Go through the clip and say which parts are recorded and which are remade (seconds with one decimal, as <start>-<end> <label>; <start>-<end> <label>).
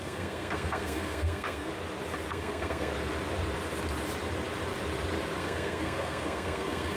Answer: 0.0-1.7 remade; 1.7-2.3 recorded; 2.3-2.9 remade; 2.9-5.4 recorded; 5.4-7.0 remade